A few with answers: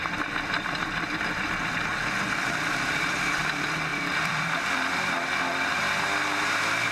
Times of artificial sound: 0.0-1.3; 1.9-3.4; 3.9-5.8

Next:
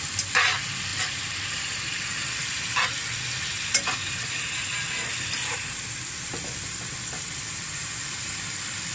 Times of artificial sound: 0.0-3.0; 5.1-8.9